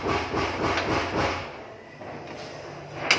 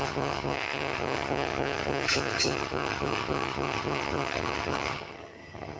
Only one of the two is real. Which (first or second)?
first